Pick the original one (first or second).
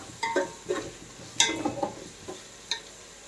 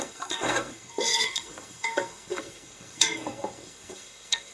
first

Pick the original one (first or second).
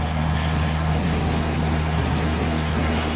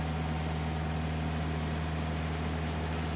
second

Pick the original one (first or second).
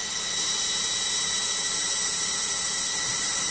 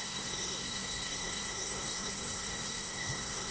first